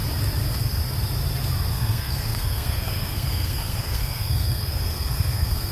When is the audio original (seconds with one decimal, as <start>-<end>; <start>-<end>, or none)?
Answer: 0.0-1.7